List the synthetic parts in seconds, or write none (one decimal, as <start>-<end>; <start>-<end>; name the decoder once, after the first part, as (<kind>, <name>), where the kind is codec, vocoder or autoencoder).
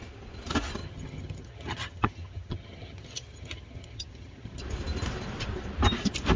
0.8-4.6 (vocoder, HiFi-GAN)